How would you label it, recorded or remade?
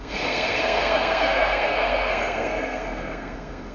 remade